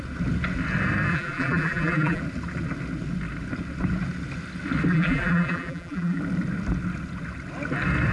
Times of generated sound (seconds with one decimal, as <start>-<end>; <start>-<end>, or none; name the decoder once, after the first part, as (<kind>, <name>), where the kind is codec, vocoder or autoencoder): 1.1-2.2 (vocoder, BigVGAN v2); 4.9-6.2